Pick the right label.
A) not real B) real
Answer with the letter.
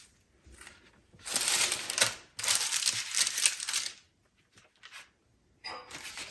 B